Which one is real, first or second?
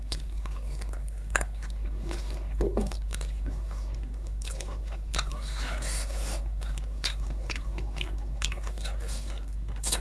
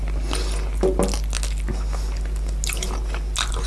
second